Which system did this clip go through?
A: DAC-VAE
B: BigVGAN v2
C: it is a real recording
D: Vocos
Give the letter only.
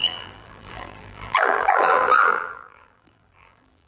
B